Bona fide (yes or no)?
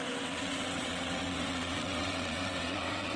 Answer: no